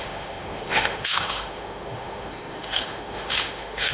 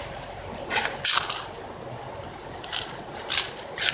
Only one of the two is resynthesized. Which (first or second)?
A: first